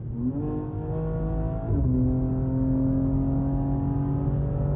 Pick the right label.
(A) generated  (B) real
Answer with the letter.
B